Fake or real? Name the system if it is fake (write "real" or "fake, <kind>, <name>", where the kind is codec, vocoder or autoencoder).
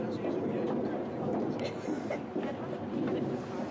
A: real